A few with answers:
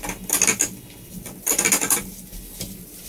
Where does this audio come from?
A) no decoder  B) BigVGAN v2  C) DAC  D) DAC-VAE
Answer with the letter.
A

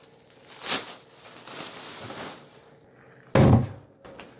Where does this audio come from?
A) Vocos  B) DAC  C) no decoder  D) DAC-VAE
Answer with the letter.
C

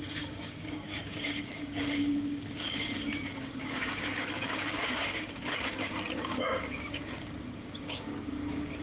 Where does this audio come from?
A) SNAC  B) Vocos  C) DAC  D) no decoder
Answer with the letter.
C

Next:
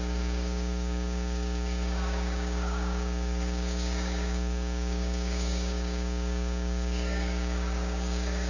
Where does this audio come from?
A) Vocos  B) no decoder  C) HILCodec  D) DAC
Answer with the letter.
D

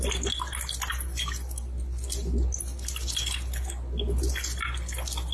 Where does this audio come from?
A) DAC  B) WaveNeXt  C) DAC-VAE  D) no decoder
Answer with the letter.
D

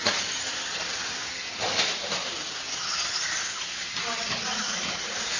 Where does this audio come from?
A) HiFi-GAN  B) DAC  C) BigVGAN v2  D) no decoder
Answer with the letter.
D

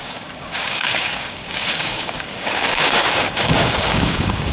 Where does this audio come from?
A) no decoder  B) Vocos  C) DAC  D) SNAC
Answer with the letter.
C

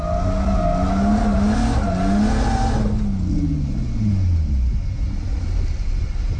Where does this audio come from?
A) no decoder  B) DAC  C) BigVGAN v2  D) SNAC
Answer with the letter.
A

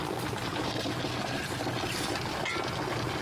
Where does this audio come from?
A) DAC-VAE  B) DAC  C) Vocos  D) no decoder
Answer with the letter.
D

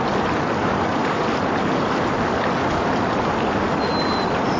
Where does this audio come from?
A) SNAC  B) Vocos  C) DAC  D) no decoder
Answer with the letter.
D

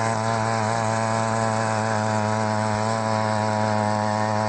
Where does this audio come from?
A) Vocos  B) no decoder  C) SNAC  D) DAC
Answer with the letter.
B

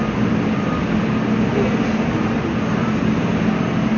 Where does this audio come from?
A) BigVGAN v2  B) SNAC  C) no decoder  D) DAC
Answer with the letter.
C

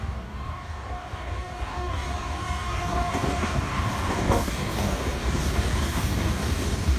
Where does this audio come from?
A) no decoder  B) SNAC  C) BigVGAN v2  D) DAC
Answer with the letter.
D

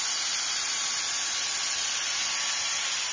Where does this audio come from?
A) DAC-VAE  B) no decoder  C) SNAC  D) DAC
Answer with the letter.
B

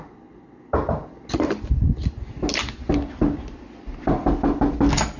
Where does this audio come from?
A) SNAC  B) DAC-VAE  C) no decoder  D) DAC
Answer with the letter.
C